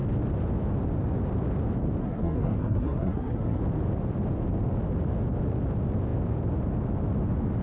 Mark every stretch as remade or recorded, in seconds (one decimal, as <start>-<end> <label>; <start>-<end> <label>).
0.0-2.0 recorded; 2.0-3.6 remade; 3.6-7.6 recorded